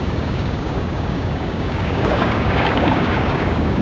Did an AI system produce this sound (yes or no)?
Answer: yes